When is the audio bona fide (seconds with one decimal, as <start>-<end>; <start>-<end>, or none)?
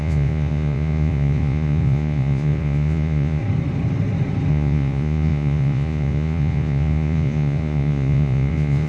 3.4-4.5